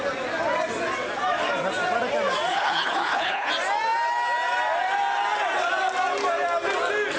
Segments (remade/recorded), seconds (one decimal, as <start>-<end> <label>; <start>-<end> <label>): 0.0-2.5 recorded; 2.5-3.5 remade; 3.5-7.2 recorded